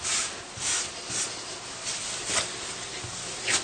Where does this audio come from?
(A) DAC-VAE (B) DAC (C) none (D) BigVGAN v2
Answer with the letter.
C